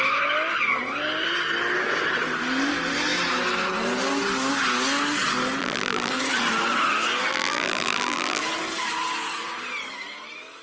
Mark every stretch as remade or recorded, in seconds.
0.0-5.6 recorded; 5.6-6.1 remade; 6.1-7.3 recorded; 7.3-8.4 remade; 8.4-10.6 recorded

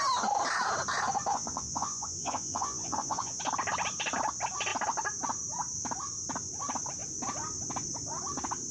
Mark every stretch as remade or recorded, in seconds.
0.0-1.3 recorded; 1.3-3.4 remade; 3.4-8.7 recorded

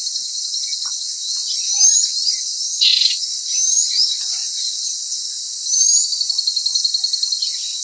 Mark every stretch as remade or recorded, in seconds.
0.0-1.4 recorded; 1.4-3.2 remade; 3.2-7.8 recorded

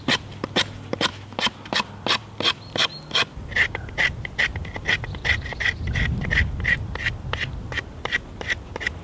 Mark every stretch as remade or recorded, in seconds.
0.0-1.1 remade; 1.1-1.7 recorded; 1.7-9.0 remade